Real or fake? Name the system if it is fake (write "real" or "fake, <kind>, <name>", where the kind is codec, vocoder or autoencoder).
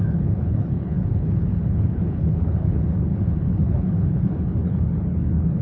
fake, codec, HILCodec